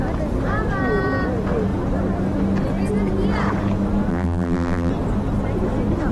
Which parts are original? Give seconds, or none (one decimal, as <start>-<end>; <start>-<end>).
0.0-4.1; 4.9-6.1